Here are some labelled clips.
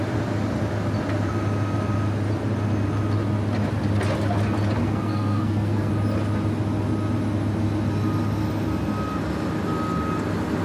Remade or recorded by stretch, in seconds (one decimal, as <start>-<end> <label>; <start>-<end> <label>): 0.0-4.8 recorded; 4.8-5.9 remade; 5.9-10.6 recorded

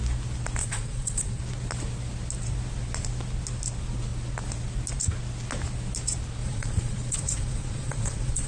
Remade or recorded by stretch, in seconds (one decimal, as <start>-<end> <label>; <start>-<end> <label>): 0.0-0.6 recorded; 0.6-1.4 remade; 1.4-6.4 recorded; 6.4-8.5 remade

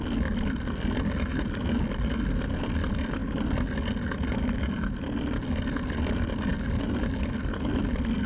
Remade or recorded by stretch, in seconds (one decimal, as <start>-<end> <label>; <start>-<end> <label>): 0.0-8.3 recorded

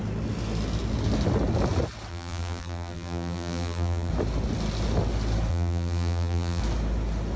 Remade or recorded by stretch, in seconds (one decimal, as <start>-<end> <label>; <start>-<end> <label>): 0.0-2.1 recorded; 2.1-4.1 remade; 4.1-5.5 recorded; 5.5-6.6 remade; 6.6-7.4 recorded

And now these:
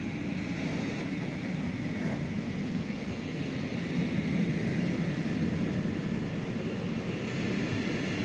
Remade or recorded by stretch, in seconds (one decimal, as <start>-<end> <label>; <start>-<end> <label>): 0.0-2.6 recorded; 2.6-3.5 remade; 3.5-8.2 recorded

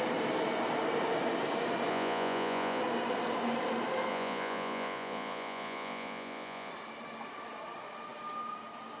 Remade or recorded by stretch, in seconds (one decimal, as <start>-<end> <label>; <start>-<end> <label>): 0.0-1.9 recorded; 1.9-2.8 remade; 2.8-4.1 recorded; 4.1-6.7 remade; 6.7-9.0 recorded